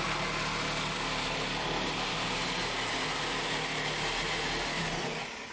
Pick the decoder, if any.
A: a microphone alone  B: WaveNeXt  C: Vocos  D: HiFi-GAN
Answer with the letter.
A